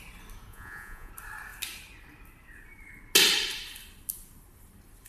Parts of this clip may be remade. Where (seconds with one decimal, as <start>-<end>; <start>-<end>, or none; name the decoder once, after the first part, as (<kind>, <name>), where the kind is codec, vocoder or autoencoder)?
0.5-1.1 (vocoder, Vocos)